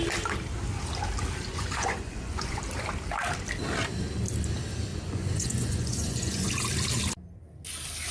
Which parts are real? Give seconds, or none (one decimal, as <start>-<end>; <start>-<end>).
0.0-1.5; 2.6-4.9; 6.5-8.1